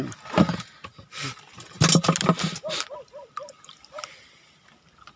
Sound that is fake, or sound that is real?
real